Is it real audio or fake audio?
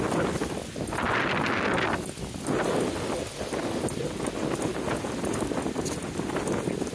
real